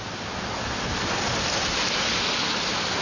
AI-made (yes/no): yes